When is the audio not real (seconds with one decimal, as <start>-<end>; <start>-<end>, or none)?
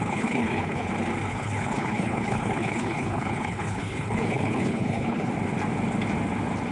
0.0-0.9; 1.3-5.3